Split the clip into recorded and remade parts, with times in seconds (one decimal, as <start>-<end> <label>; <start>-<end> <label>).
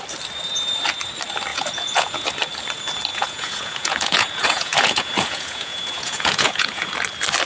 0.0-1.5 recorded; 1.5-2.3 remade; 2.3-3.1 recorded; 3.1-6.9 remade; 6.9-7.5 recorded